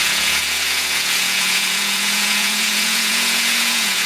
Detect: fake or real fake